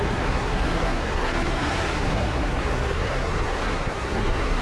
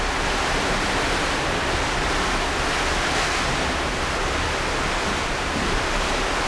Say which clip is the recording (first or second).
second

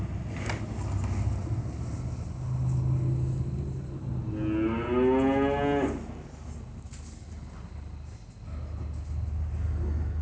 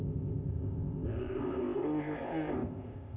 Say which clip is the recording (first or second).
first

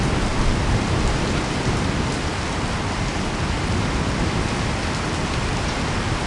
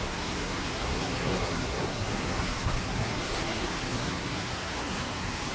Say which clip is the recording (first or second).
first